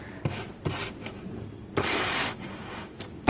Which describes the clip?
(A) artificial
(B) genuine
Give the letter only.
A